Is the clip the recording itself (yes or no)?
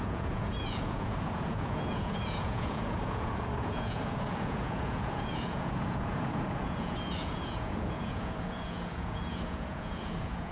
no